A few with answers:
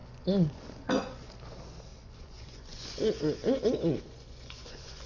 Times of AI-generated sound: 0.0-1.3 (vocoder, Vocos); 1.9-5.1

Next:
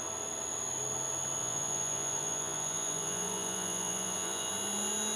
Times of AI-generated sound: 1.4-4.5 (vocoder, Vocos)

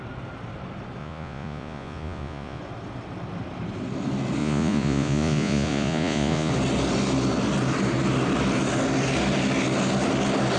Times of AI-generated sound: 1.0-2.6 (vocoder, Vocos); 4.4-6.5